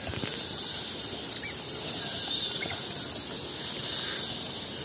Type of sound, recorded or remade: recorded